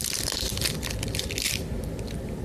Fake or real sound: real